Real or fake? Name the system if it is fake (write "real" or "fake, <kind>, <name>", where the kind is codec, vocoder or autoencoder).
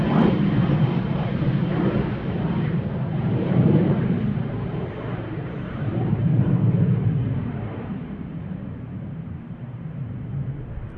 fake, vocoder, BigVGAN v2